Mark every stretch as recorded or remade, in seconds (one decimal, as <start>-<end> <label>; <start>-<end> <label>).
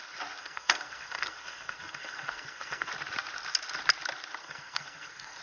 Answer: 0.0-0.4 recorded; 0.4-2.9 remade; 2.9-4.4 recorded; 4.4-5.4 remade